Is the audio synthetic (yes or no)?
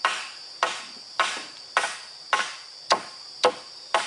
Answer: no